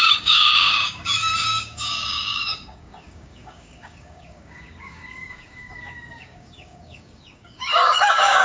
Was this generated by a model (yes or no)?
yes